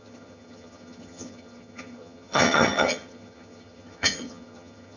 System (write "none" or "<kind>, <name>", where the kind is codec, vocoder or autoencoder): vocoder, HiFi-GAN